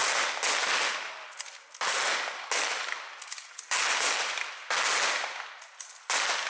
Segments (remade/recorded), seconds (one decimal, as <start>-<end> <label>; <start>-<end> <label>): 0.0-6.5 recorded